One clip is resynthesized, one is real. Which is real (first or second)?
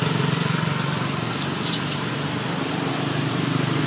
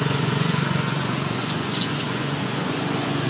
first